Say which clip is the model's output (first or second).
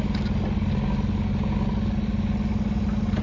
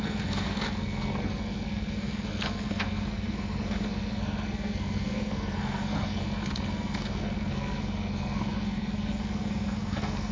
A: second